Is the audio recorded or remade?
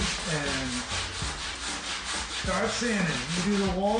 recorded